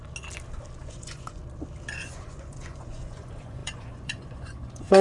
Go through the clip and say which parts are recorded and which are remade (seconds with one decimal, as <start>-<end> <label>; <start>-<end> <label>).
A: 0.0-0.8 recorded; 0.8-1.4 remade; 1.4-2.0 recorded; 2.0-5.0 remade